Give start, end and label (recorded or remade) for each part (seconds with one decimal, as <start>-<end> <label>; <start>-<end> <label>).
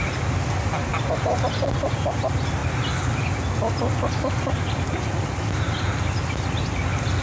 0.0-0.9 recorded; 0.9-1.5 remade; 1.5-7.2 recorded